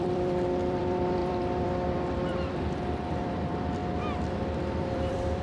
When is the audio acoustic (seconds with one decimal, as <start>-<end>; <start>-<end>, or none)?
3.8-4.8

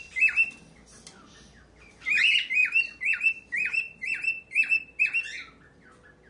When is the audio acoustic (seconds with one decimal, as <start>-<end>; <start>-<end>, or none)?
0.0-2.6; 5.0-6.3

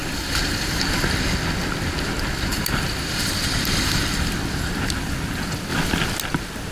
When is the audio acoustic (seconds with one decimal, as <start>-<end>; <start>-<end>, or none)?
0.8-2.5; 4.3-6.7